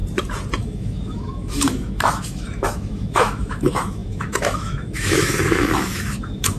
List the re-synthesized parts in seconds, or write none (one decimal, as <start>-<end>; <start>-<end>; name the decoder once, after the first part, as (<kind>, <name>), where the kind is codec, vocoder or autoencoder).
0.6-6.6 (autoencoder, DAC-VAE)